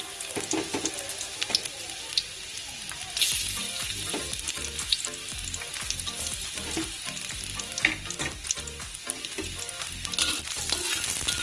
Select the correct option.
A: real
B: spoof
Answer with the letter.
A